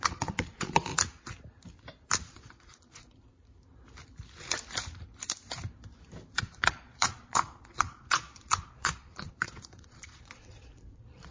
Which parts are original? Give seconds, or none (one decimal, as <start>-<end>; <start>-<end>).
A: 0.9-2.3; 3.3-6.4